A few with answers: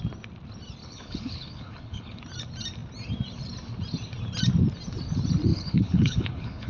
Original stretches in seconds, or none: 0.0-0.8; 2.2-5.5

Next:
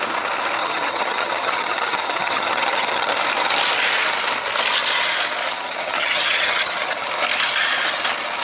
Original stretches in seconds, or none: 0.0-0.6; 3.1-5.5; 7.1-8.4

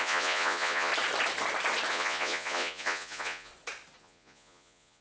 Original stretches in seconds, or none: 0.9-1.9; 3.5-4.0

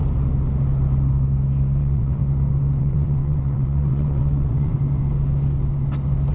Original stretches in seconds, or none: 0.0-1.8; 2.2-2.8; 4.7-6.3

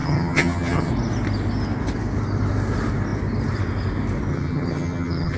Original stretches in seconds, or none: 0.9-4.3